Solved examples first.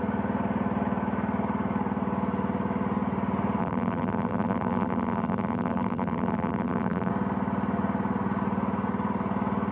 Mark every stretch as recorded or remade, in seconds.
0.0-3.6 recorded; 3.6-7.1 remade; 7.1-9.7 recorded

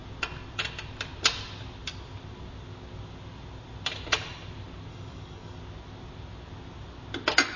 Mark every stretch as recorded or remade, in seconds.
0.0-4.9 recorded; 4.9-5.6 remade; 5.6-7.6 recorded

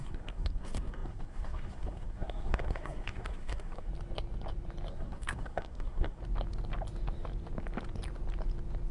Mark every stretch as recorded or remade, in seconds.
0.0-3.9 remade; 3.9-4.9 recorded; 4.9-6.2 remade; 6.2-8.9 recorded

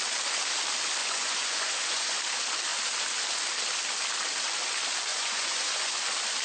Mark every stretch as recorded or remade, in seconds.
0.0-1.0 recorded; 1.0-2.2 remade; 2.2-5.1 recorded; 5.1-5.9 remade; 5.9-6.4 recorded

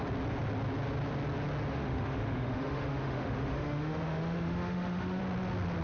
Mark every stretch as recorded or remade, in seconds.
0.0-1.7 recorded; 1.7-5.2 remade; 5.2-5.8 recorded

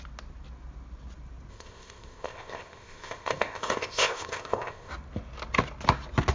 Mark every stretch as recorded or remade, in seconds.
0.0-1.5 recorded; 1.5-4.9 remade; 4.9-6.3 recorded

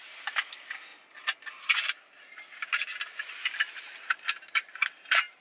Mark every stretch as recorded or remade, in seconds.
0.0-5.4 recorded

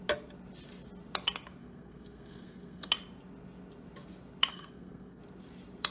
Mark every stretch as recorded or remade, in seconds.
0.0-1.6 recorded; 1.6-2.9 remade; 2.9-4.5 recorded; 4.5-5.2 remade; 5.2-5.9 recorded